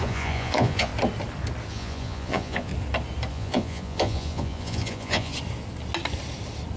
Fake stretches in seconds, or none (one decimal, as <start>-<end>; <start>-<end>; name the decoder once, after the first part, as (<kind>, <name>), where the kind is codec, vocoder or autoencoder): 0.0-0.9 (vocoder, Vocos); 1.7-2.7; 3.3-5.3